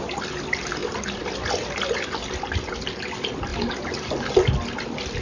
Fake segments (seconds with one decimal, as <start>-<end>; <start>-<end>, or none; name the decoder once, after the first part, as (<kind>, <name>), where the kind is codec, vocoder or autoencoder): none